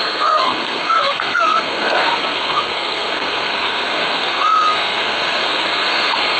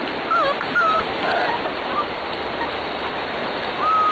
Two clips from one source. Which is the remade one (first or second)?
first